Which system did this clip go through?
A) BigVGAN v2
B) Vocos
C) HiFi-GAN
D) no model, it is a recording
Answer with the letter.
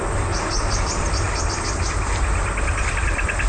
D